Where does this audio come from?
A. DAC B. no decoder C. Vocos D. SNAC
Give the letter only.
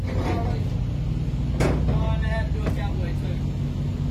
B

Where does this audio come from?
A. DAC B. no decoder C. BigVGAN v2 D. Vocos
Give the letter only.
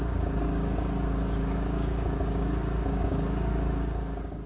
A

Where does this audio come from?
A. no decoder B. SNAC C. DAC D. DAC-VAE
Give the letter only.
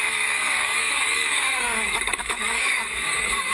C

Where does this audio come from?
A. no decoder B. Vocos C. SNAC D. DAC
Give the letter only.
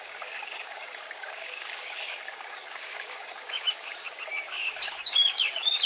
D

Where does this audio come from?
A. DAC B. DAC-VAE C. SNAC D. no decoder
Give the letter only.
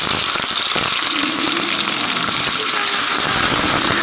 D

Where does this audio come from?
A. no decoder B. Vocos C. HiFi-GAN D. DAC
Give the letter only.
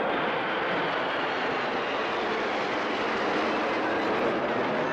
A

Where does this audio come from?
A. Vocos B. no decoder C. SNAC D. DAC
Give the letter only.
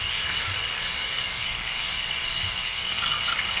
D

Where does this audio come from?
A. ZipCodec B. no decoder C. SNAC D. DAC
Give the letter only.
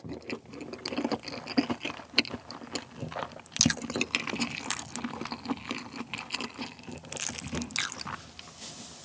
B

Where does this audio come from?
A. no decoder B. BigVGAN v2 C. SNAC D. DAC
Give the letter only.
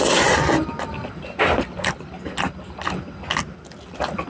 A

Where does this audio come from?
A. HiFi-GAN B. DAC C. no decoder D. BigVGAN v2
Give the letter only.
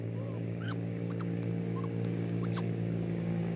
B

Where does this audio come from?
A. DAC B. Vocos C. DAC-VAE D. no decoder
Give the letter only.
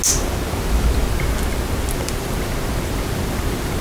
D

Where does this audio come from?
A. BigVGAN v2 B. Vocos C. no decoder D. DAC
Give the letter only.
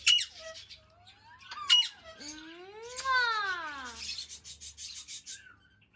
C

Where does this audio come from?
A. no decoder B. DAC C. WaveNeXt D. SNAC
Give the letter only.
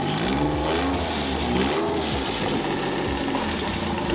A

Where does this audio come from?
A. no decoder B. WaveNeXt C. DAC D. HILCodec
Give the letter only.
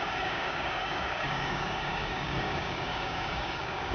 C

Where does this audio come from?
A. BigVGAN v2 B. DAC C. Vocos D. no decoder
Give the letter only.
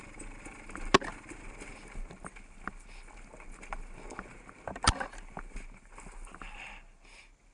D